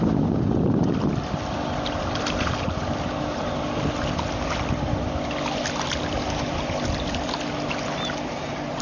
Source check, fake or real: real